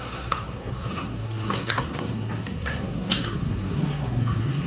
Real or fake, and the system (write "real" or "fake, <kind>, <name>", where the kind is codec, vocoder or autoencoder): fake, codec, SNAC